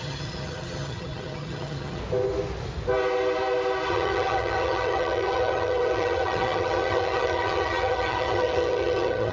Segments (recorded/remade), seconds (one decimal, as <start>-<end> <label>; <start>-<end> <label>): 0.0-2.0 remade; 2.0-3.9 recorded; 3.9-9.3 remade